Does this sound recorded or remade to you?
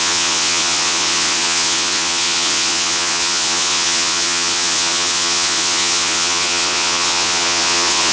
remade